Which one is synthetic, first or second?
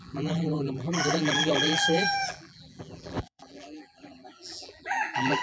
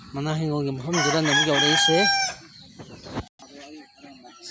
first